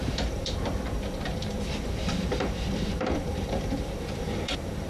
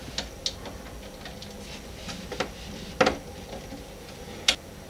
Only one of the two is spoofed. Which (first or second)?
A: first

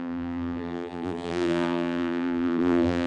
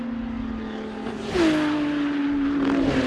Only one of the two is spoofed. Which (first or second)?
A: first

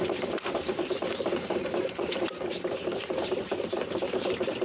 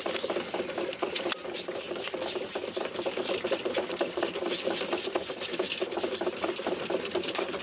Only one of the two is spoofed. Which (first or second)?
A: first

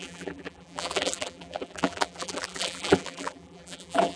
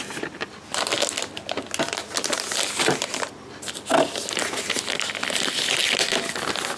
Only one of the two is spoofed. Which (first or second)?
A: first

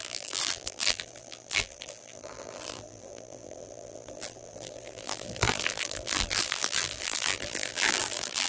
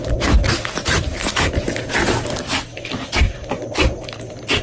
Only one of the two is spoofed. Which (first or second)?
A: first